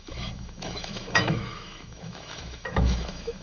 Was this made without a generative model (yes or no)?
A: no